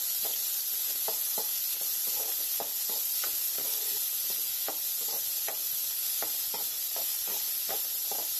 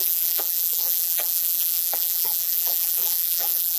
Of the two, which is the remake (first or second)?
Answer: second